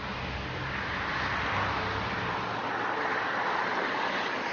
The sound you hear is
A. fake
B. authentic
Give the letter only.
B